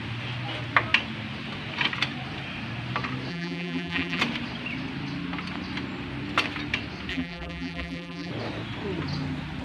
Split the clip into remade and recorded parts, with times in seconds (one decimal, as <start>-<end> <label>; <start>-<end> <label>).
0.0-3.3 recorded; 3.3-4.2 remade; 4.2-7.1 recorded; 7.1-8.3 remade; 8.3-9.6 recorded